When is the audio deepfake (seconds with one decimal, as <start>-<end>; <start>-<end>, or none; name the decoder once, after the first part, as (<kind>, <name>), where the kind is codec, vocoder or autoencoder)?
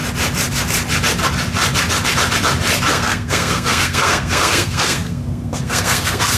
2.9-6.4 (codec, SNAC)